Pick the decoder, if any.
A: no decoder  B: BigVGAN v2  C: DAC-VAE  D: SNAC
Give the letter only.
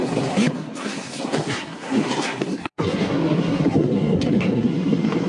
D